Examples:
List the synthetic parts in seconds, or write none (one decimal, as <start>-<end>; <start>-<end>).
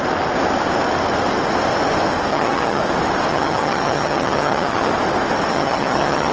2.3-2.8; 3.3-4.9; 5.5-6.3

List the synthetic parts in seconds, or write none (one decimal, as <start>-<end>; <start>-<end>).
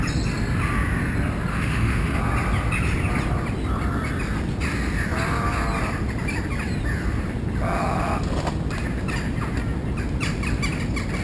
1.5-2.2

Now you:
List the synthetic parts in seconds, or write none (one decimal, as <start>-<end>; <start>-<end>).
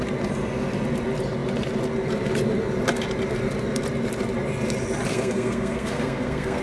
5.1-6.6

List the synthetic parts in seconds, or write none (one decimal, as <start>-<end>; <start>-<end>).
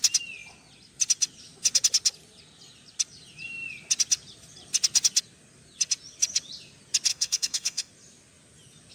7.1-7.9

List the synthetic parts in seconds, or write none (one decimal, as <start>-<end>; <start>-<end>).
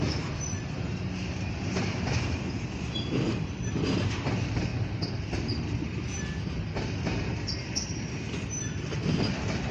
none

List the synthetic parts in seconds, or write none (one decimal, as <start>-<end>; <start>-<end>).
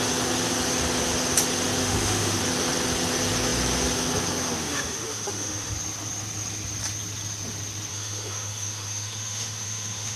1.8-2.4; 4.6-5.7; 7.9-10.2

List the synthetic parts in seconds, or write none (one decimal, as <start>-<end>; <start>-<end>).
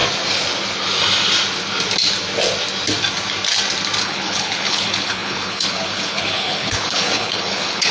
4.0-7.9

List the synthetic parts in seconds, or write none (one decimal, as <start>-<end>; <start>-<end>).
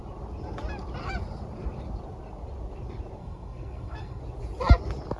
3.2-4.2